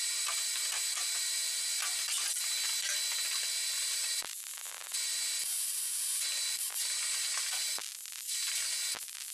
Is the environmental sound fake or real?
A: real